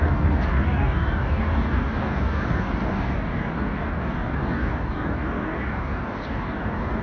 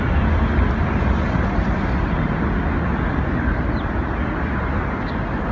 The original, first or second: second